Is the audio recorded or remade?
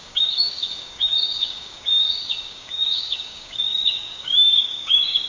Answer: remade